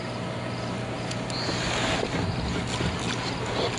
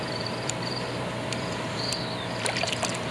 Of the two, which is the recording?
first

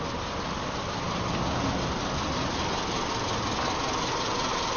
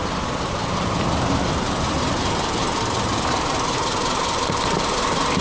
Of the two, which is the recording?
first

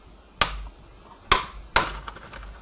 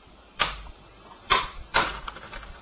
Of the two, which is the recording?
first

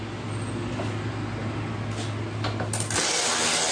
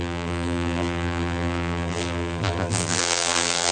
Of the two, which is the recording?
first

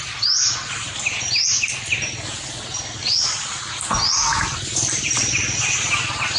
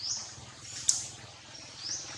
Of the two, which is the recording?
first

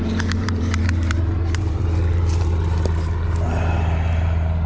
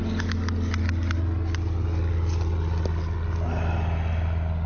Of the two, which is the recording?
second